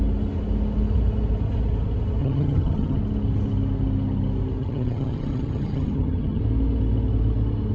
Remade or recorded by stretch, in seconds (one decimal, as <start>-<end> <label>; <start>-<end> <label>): 0.0-2.2 recorded; 2.2-3.0 remade; 3.0-4.6 recorded; 4.6-6.4 remade; 6.4-7.7 recorded

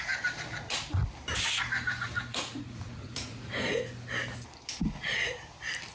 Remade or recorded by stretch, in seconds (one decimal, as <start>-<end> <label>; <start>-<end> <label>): 0.0-2.3 recorded; 2.3-3.8 remade; 3.8-5.9 recorded

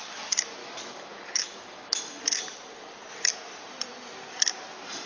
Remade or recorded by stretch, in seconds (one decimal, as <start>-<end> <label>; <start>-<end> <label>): 0.0-0.6 recorded; 0.6-2.2 remade; 2.2-5.1 recorded

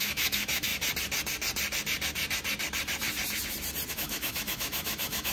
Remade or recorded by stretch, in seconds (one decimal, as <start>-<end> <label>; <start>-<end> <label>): 0.0-0.7 remade; 0.7-3.9 recorded; 3.9-5.3 remade

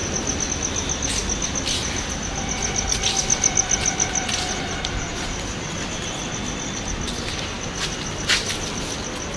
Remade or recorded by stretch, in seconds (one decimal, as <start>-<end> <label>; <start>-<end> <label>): 0.0-9.4 recorded

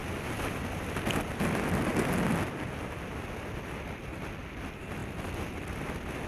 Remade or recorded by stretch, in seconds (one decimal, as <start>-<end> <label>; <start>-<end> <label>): 0.0-6.3 recorded

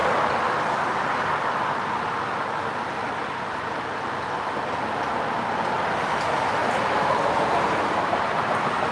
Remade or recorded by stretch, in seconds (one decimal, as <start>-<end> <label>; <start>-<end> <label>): 0.0-6.6 recorded; 6.6-8.5 remade; 8.5-8.9 recorded

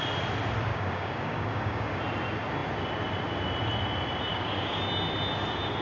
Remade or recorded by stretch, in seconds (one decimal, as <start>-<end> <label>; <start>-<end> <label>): 0.0-0.7 recorded; 0.7-2.0 remade; 2.0-4.3 recorded; 4.3-4.8 remade; 4.8-5.8 recorded